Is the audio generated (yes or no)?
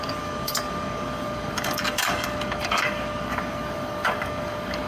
yes